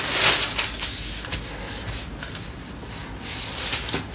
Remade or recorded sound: recorded